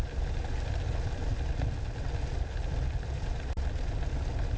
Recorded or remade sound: recorded